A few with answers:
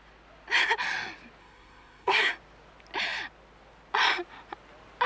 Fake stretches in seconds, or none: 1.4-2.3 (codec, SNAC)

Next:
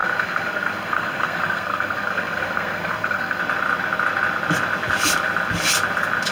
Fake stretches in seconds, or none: 0.0-3.4 (codec, SNAC)

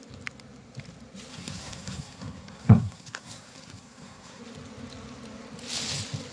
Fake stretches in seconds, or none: 1.3-4.4 (codec, SNAC)

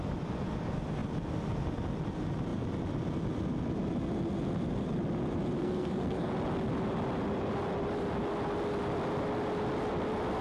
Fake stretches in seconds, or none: 5.6-6.3 (codec, SNAC)